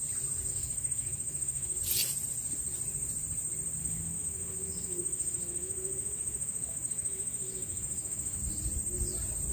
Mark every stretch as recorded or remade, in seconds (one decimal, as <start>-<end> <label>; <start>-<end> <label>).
0.0-0.5 recorded; 0.5-1.8 remade; 1.8-3.8 recorded; 3.8-8.4 remade; 8.4-9.5 recorded